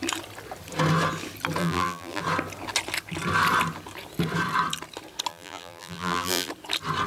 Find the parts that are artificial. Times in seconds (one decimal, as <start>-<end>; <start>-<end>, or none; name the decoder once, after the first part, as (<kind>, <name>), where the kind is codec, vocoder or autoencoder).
1.6-2.2 (vocoder, BigVGAN v2); 5.3-6.5